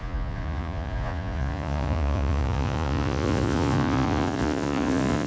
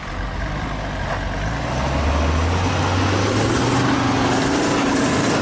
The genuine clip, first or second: second